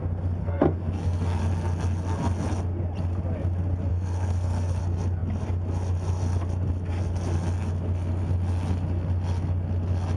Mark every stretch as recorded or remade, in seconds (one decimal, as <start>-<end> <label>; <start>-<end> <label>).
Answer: 0.0-0.4 recorded; 0.4-1.4 remade; 1.4-3.9 recorded; 3.9-4.8 remade; 4.8-10.2 recorded